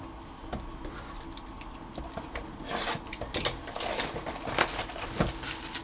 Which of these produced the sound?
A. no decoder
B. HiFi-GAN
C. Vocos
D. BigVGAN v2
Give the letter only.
A